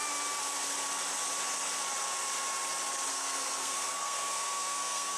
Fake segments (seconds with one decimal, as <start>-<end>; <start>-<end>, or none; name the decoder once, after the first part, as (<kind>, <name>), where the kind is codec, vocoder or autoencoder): 3.1-5.2 (codec, SNAC)